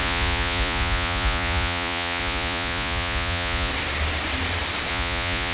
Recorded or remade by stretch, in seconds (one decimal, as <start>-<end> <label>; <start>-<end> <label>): 0.0-3.7 remade; 3.7-4.9 recorded; 4.9-5.5 remade